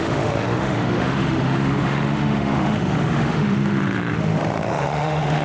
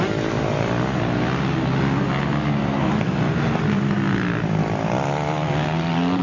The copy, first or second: first